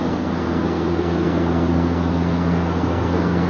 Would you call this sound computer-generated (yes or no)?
yes